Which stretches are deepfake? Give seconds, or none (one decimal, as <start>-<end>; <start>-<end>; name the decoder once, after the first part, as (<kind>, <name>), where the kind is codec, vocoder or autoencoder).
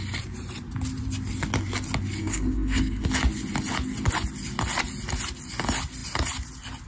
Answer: 2.2-3.0 (codec, SNAC)